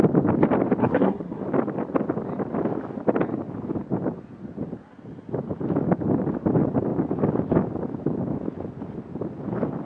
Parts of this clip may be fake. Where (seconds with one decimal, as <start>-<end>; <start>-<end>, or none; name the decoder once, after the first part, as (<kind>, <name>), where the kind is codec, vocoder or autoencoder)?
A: 0.8-1.4 (codec, SNAC)